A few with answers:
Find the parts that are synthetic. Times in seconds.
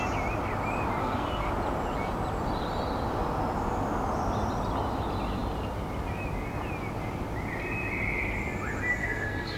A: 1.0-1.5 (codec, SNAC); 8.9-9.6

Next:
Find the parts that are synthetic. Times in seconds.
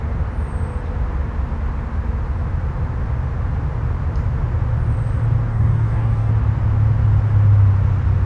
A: 5.5-6.3 (codec, DAC)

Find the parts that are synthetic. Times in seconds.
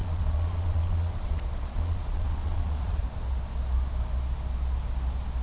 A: 0.0-3.0 (vocoder, Vocos)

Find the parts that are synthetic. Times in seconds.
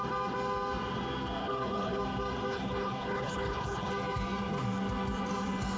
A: 1.4-2.0 (codec, HILCodec); 2.5-3.9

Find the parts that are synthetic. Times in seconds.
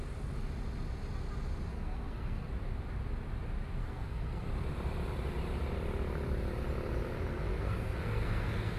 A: 1.7-2.5 (codec, SNAC); 3.8-4.5; 7.3-8.8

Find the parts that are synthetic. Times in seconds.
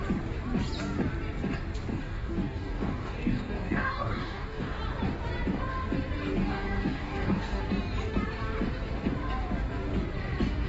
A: 1.9-4.8 (codec, DAC); 6.4-7.6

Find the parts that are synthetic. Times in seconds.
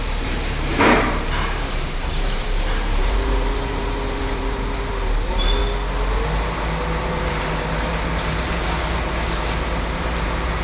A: 0.0-5.6 (vocoder, BigVGAN v2); 7.0-10.6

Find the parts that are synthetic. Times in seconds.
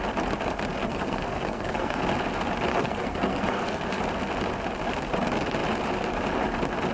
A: 0.8-2.0 (codec, SNAC); 2.7-4.0